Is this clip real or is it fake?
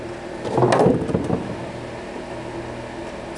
real